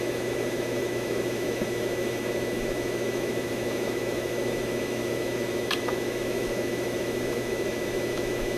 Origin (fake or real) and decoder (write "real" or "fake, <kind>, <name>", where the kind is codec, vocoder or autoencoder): fake, autoencoder, DAC-VAE